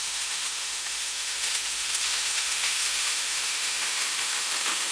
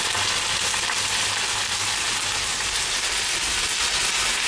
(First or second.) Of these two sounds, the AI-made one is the first